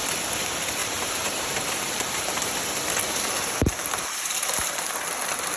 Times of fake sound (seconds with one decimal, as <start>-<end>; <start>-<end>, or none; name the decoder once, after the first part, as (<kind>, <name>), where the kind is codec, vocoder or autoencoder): 0.8-2.5 (vocoder, BigVGAN v2); 3.0-4.9